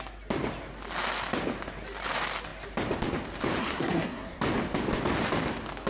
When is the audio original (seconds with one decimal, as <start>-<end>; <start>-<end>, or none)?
0.0-3.6; 4.4-5.9